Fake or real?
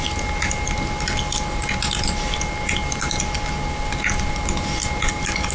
real